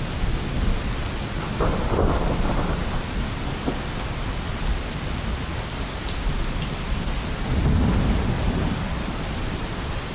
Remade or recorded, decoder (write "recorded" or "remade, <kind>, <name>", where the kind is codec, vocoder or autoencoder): recorded